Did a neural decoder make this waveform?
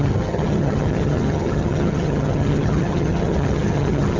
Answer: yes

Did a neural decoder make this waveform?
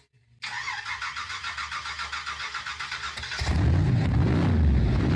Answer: no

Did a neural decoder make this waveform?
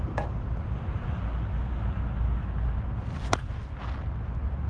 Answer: no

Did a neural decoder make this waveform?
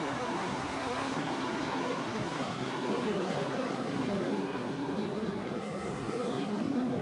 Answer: yes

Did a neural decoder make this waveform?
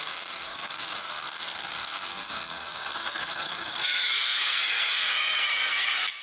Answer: yes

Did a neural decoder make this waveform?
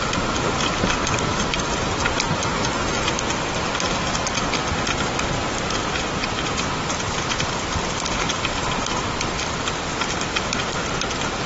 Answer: no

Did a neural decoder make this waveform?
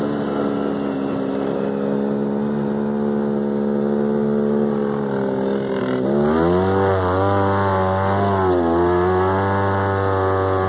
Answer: no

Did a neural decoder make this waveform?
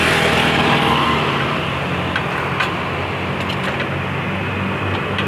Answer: no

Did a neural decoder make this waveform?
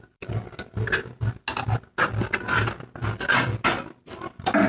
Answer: no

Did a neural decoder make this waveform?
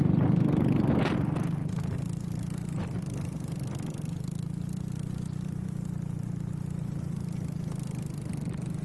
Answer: no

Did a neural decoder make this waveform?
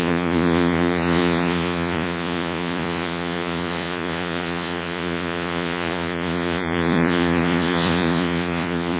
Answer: yes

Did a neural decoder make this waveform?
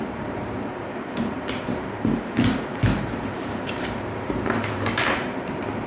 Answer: yes